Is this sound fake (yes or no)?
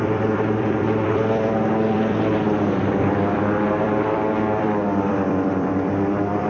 yes